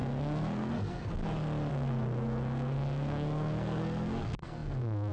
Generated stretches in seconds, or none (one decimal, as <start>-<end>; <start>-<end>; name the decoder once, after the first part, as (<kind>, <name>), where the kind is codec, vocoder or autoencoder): 0.0-1.2 (codec, SNAC); 1.7-5.1